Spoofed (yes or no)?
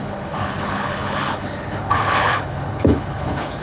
yes